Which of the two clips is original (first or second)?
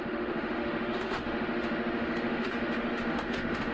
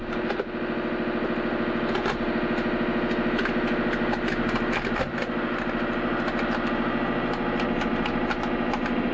second